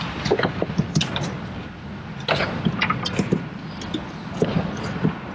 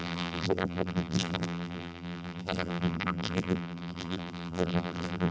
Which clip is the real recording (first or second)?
first